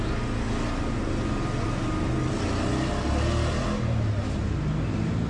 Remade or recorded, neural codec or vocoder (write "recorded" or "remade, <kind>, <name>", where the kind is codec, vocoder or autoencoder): recorded